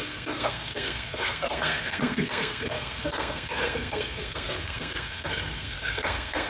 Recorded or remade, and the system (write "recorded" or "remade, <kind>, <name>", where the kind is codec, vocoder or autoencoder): remade, codec, SNAC